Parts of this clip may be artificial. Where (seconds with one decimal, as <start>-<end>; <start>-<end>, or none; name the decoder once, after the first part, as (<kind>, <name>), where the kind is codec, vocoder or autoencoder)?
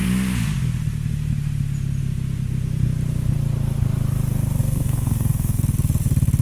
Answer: 4.6-5.6 (codec, SNAC)